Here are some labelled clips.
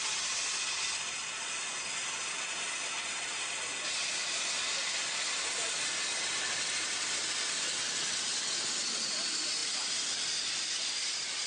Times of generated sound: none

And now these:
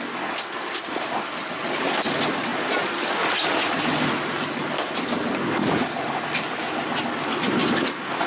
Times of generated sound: none

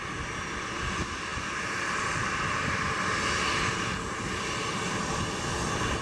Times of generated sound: none

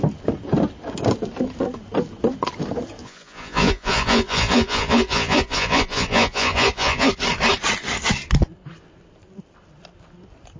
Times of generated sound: 3.0-7.1 (vocoder, Vocos)

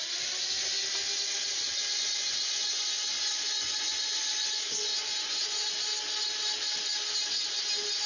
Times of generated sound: 1.7-5.7 (vocoder, Vocos)

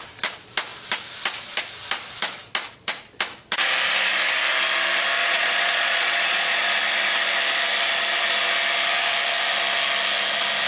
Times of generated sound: 5.2-6.7 (vocoder, Vocos)

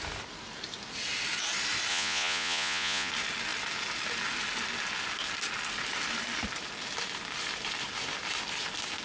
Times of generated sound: 1.9-3.1 (vocoder, Vocos)